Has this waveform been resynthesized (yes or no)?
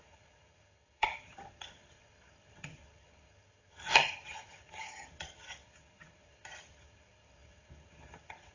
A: yes